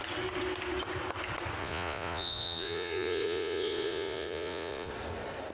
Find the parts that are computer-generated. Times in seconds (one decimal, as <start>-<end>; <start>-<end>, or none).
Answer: 1.6-4.9

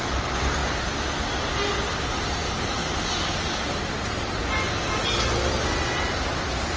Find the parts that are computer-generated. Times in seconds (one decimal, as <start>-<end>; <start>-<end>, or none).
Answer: none

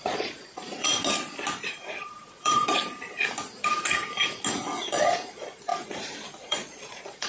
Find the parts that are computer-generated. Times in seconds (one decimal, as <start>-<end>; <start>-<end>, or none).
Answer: 0.0-1.0; 1.7-2.8; 4.8-7.3

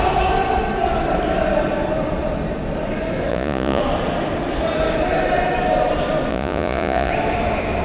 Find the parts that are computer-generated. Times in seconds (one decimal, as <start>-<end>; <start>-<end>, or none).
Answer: 3.3-3.8; 6.3-7.1

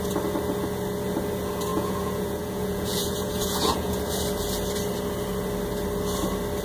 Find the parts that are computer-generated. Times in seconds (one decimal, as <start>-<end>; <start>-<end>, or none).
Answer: 1.7-4.0

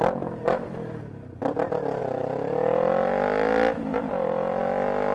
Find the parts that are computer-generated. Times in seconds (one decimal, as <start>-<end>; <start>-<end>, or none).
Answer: 2.0-4.6

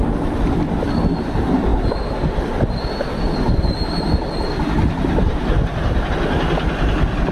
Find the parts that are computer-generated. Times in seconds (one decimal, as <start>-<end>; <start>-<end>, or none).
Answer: none